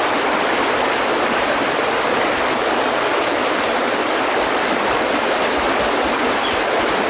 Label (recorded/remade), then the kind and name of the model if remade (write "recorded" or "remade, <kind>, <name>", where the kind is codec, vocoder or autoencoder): recorded